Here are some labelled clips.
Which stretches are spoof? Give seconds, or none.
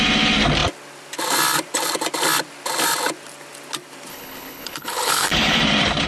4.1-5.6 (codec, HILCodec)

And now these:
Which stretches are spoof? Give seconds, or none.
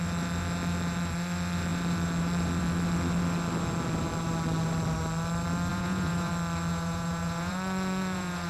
5.7-6.3 (vocoder, Vocos); 6.7-8.5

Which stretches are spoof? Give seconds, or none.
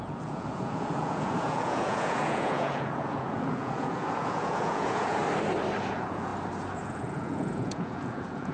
0.0-5.2 (vocoder, Vocos); 5.8-6.3; 6.8-8.5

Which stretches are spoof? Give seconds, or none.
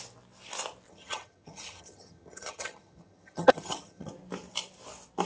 0.9-4.1 (vocoder, HiFi-GAN)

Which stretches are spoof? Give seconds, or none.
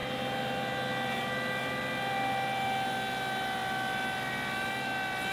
none